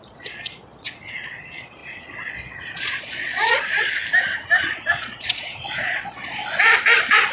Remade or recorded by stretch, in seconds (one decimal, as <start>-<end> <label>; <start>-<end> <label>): 0.0-4.0 remade; 4.0-4.6 recorded; 4.6-6.4 remade; 6.4-7.3 recorded